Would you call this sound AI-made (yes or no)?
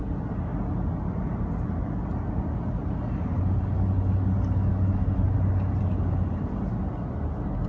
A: no